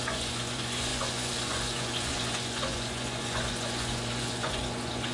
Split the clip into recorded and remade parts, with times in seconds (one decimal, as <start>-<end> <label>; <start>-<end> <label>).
0.0-5.1 remade